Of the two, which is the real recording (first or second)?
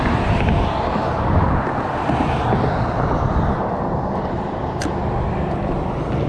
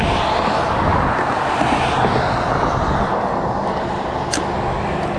second